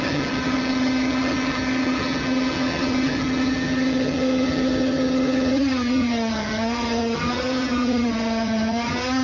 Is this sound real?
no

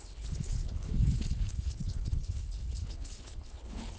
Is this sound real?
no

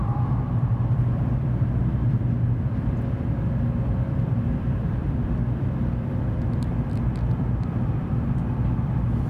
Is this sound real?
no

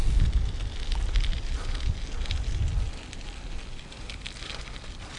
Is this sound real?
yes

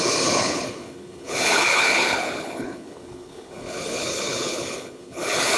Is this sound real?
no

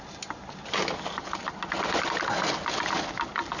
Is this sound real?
yes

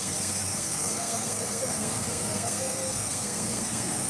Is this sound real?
no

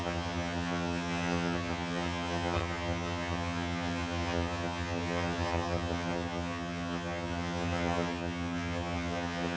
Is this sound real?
no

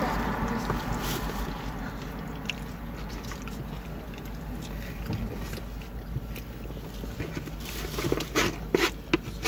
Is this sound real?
yes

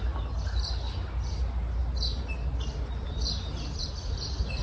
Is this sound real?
yes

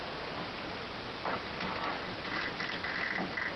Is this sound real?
yes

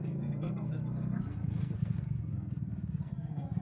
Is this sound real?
no